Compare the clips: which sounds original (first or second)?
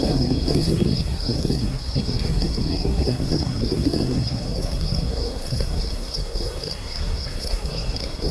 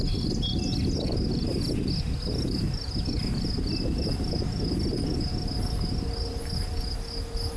second